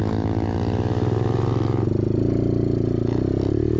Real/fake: real